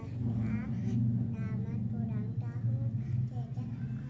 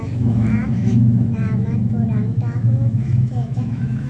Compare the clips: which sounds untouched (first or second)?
first